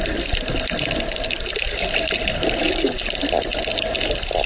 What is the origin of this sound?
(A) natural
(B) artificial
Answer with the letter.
A